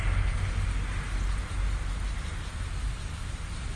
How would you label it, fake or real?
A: real